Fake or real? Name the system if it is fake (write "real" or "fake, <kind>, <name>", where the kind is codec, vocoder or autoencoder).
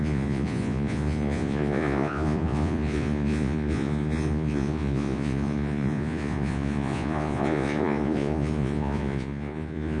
fake, vocoder, Vocos